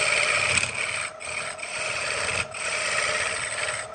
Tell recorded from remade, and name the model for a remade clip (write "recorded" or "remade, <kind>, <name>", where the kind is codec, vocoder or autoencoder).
recorded